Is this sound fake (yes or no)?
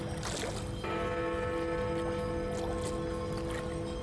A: no